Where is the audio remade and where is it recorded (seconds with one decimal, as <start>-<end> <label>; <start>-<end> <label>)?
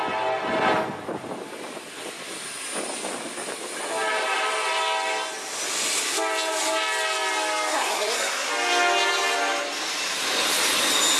0.0-7.7 recorded; 7.7-8.5 remade; 8.5-11.2 recorded